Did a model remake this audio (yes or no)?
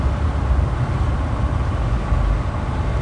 no